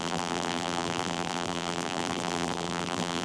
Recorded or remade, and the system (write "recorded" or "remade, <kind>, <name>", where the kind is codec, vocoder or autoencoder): remade, vocoder, BigVGAN v2